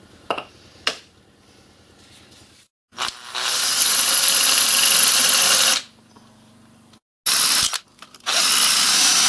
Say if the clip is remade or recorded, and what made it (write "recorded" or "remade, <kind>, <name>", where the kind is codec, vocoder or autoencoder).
recorded